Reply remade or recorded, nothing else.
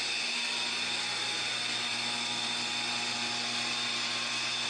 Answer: recorded